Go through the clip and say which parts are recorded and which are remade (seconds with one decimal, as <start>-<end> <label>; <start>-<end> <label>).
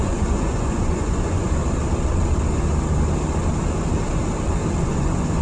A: 0.0-1.6 remade; 1.6-4.8 recorded; 4.8-5.4 remade